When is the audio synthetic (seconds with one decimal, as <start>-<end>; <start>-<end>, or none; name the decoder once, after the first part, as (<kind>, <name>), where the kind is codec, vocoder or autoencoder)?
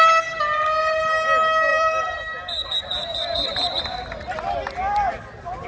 1.7-3.8 (vocoder, BigVGAN v2)